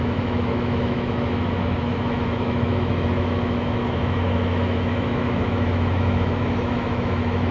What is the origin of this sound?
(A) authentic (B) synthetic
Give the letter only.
B